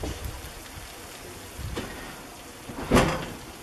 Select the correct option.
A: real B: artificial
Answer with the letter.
A